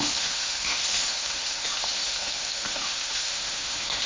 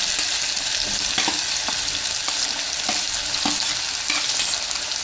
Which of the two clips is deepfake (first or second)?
first